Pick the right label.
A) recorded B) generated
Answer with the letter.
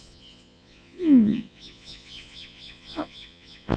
B